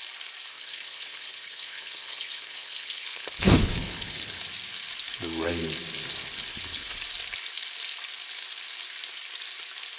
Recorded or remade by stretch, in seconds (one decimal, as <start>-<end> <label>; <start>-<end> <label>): 0.0-0.5 recorded; 0.5-4.4 remade; 4.4-6.5 recorded; 6.5-7.0 remade; 7.0-10.0 recorded

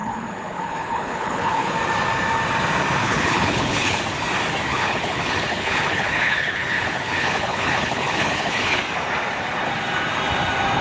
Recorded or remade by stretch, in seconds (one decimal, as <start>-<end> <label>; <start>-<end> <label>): 0.0-1.7 remade; 1.7-3.0 recorded; 3.0-4.0 remade; 4.0-4.7 recorded; 4.7-8.8 remade; 8.8-10.8 recorded

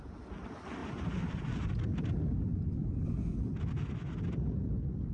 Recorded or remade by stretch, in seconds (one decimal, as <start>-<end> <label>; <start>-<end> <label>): 0.0-5.1 recorded

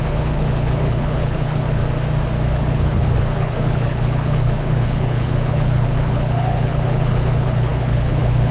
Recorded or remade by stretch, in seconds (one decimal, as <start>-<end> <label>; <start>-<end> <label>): 0.0-1.8 remade; 1.8-2.5 recorded; 2.5-8.5 remade

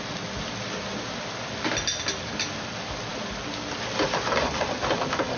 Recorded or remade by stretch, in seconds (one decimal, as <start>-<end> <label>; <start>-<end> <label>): 0.0-5.4 recorded

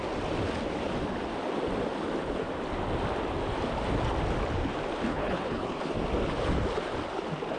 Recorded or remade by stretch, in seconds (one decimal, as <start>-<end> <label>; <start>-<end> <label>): 0.0-5.1 recorded; 5.1-5.8 remade; 5.8-7.6 recorded